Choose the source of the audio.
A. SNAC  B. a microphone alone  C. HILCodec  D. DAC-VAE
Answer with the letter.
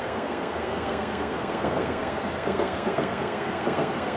A